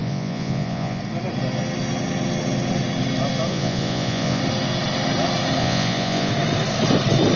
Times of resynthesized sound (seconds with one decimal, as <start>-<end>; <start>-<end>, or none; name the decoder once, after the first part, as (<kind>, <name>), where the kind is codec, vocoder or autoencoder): 0.0-1.0 (vocoder, Vocos); 3.5-4.4; 5.6-6.3